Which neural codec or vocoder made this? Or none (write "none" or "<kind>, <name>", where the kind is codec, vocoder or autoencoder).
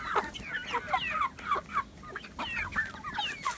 none